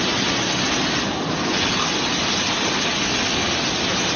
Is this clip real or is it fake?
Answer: real